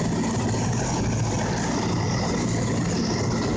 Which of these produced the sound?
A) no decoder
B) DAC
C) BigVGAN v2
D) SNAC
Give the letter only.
A